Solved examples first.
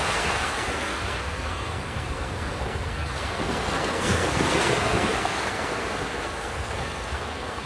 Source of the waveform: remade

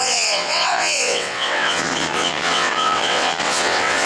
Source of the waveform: remade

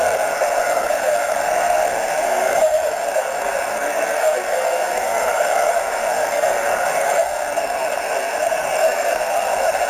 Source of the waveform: remade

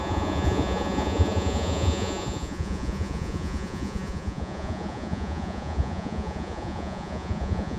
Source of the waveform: remade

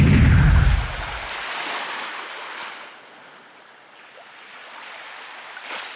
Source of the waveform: recorded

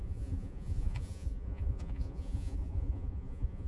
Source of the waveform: remade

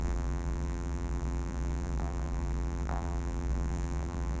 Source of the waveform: remade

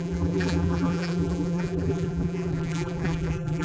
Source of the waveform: remade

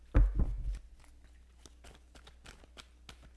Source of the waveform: recorded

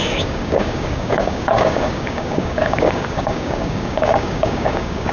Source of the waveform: remade